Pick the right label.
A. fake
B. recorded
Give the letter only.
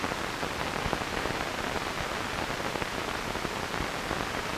B